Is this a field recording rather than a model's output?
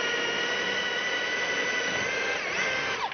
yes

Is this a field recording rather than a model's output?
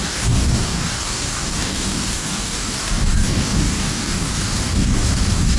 no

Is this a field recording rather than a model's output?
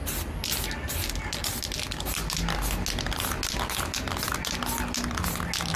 yes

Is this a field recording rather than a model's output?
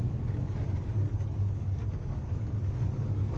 no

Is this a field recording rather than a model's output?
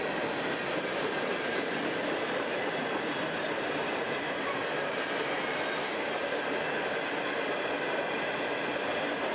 yes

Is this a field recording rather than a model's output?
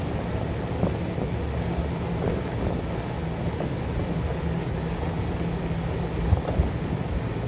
yes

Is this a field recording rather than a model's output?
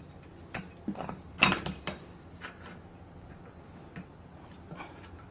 yes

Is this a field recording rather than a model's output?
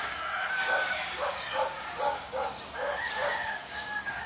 no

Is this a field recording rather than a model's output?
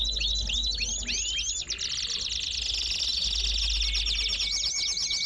yes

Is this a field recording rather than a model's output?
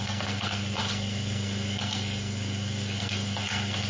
no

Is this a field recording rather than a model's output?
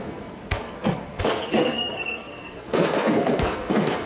no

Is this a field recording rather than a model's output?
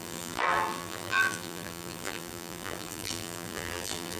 no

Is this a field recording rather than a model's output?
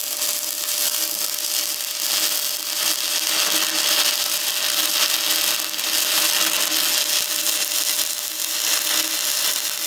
yes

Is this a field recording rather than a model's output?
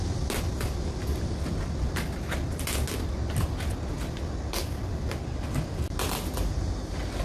yes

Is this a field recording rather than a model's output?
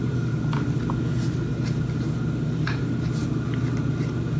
yes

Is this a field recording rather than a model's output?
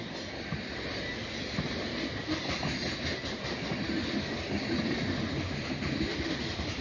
yes